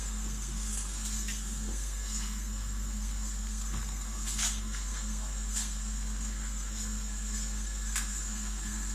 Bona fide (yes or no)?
no